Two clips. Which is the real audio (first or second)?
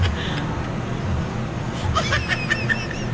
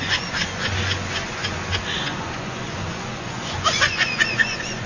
first